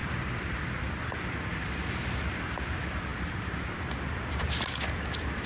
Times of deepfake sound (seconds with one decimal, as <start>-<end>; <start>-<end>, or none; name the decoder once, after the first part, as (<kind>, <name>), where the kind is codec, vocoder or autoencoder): 0.0-5.5 (vocoder, BigVGAN v2)